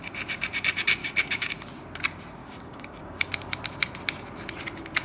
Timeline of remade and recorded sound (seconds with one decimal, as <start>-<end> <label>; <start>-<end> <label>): 0.0-1.0 recorded; 1.0-1.5 remade; 1.5-2.4 recorded; 2.4-3.3 remade; 3.3-5.0 recorded